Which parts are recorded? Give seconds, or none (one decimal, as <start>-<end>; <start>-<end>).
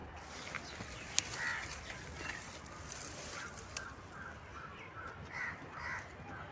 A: 0.6-1.5; 5.4-6.5